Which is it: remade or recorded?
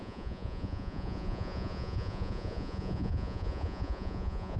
remade